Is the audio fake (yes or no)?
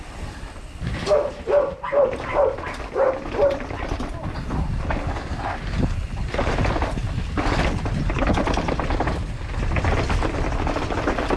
no